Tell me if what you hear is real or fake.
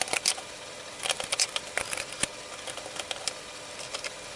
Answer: real